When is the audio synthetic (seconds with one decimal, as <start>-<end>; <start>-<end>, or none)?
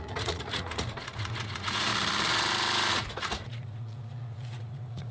0.0-1.9; 2.9-5.1